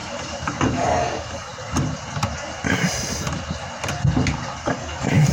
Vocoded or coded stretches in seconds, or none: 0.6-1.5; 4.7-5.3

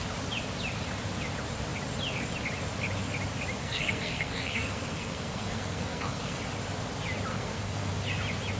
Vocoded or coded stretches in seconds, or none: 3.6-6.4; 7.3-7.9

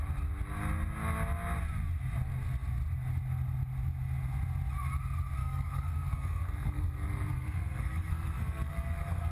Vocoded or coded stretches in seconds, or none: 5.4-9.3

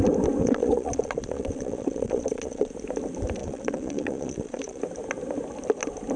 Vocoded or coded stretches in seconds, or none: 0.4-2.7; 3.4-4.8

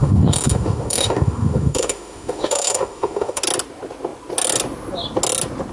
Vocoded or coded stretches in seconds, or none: 0.0-3.4